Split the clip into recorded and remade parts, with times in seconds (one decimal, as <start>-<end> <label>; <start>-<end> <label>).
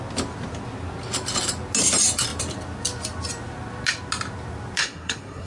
0.0-4.8 recorded; 4.8-5.5 remade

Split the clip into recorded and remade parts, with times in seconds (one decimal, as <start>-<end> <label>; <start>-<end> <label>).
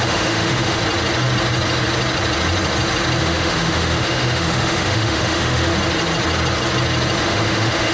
0.0-0.8 remade; 0.8-3.2 recorded; 3.2-5.7 remade; 5.7-7.2 recorded; 7.2-7.9 remade